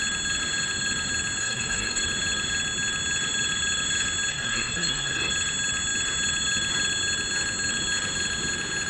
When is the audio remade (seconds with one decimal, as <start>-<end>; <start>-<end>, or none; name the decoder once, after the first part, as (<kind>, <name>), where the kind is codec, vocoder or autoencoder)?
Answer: 1.4-2.0 (codec, SNAC); 4.3-5.3